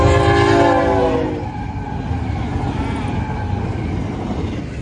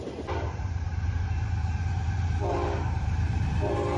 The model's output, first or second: second